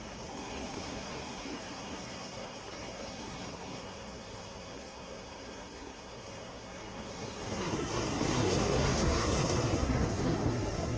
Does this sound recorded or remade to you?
remade